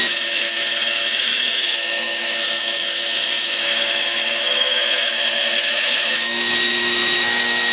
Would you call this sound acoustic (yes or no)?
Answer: no